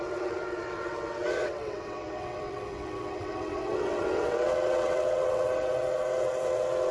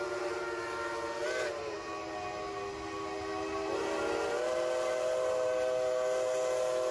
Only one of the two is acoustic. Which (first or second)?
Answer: second